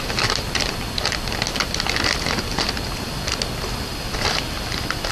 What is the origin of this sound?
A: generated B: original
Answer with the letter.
B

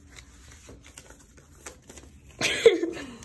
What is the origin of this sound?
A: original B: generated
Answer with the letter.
A